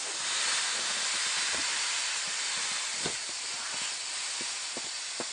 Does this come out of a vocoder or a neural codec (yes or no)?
no